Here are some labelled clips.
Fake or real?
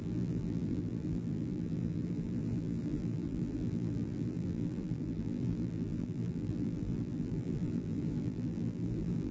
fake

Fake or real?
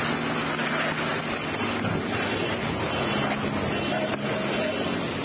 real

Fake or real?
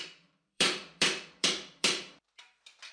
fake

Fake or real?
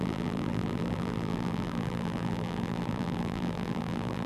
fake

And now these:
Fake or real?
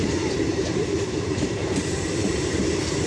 fake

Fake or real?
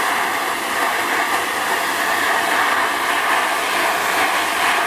real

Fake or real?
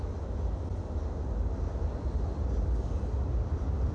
real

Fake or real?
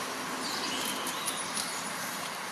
real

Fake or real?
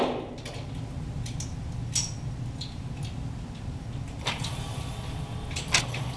real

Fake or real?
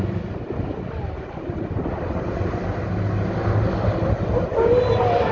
real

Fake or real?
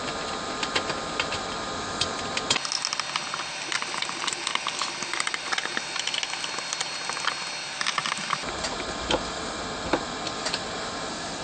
real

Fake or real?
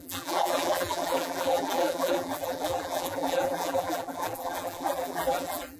fake